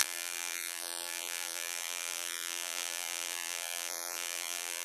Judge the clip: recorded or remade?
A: remade